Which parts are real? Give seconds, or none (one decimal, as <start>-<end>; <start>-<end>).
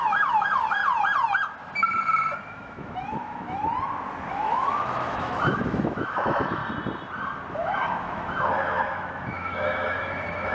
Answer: 0.8-2.5; 3.6-4.3; 6.6-7.5